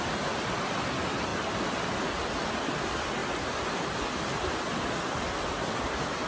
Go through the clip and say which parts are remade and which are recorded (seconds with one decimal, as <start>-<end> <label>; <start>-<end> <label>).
0.0-3.2 recorded; 3.2-3.7 remade; 3.7-6.3 recorded